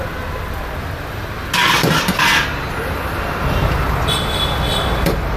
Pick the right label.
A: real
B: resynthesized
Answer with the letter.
A